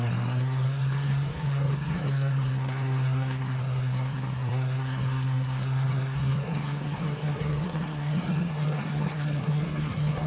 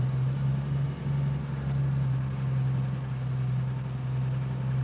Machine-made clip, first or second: first